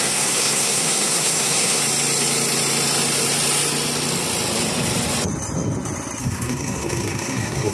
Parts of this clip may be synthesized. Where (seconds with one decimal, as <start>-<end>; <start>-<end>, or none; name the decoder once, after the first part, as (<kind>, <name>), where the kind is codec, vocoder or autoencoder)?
0.0-1.8 (codec, SNAC); 6.2-7.7